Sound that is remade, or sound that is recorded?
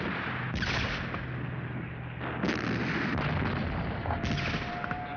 recorded